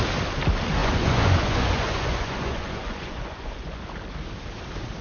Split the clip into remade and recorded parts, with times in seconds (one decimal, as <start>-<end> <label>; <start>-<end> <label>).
0.0-0.8 recorded; 0.8-3.8 remade; 3.8-5.0 recorded